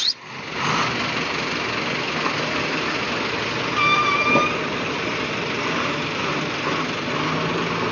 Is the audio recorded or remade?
recorded